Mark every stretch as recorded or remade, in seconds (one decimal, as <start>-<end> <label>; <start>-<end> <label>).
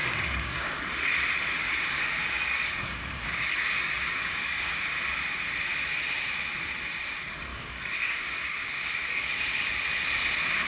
0.0-0.9 remade; 0.9-1.6 recorded; 1.6-4.8 remade; 4.8-7.5 recorded; 7.5-9.3 remade; 9.3-10.7 recorded